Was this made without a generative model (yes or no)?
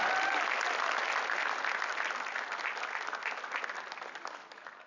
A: yes